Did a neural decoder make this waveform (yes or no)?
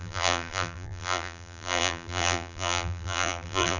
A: yes